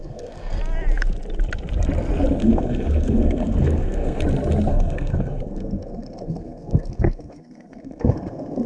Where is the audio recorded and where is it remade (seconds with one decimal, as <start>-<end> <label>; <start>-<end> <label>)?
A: 0.0-0.6 remade; 0.6-2.4 recorded; 2.4-4.2 remade; 4.2-4.7 recorded; 4.7-8.7 remade